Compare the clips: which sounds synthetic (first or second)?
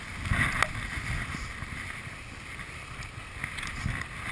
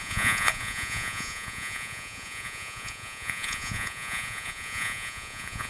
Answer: second